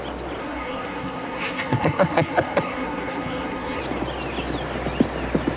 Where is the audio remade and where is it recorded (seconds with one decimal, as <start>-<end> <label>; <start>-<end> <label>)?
0.0-0.4 recorded; 0.4-3.8 remade; 3.8-5.6 recorded